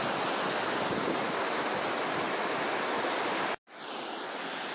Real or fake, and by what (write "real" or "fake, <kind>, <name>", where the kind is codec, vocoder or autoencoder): real